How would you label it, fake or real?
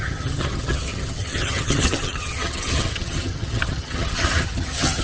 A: fake